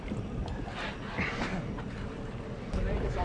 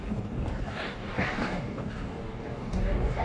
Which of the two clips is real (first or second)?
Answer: first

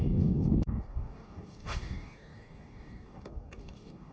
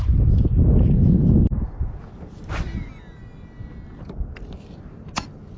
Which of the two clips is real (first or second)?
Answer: second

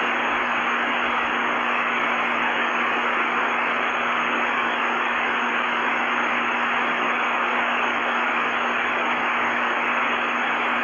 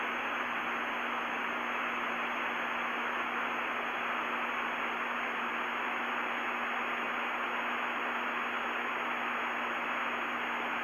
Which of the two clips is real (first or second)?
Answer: second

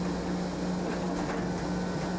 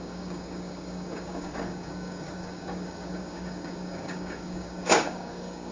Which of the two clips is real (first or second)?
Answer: first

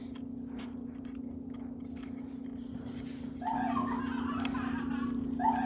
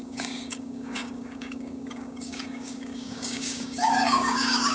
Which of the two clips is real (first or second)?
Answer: first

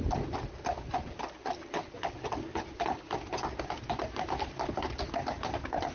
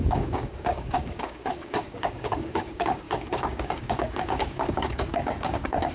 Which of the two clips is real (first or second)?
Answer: first